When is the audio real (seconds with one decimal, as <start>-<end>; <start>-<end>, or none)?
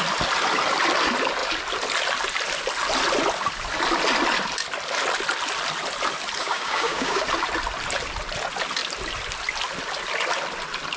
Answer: 0.0-6.4; 7.2-11.0